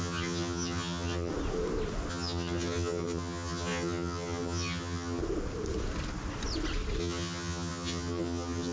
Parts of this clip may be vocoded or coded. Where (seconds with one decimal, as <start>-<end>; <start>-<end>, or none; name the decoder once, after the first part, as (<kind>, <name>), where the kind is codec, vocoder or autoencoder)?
0.0-1.3 (vocoder, HiFi-GAN); 2.1-5.2; 7.0-8.7